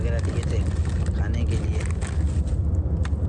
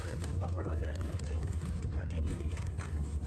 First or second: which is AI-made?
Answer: second